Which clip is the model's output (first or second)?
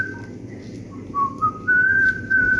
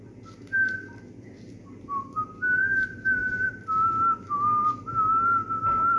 first